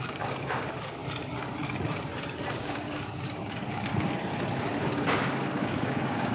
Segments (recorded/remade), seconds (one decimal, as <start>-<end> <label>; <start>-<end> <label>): 0.0-1.0 remade; 1.0-2.6 recorded; 2.6-3.9 remade; 3.9-4.8 recorded; 4.8-6.3 remade